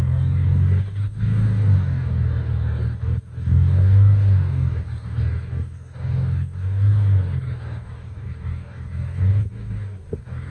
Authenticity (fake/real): fake